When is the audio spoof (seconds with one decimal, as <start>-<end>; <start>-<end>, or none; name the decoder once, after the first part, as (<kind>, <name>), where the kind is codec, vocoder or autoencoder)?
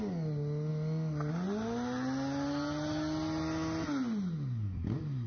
none